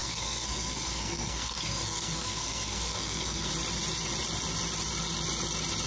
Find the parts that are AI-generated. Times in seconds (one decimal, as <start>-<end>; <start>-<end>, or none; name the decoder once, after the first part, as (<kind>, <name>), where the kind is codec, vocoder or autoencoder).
0.0-3.5 (codec, SNAC)